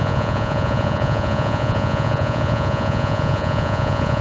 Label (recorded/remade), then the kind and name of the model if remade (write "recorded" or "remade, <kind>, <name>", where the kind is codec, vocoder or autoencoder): remade, vocoder, Vocos